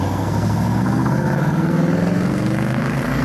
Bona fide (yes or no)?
no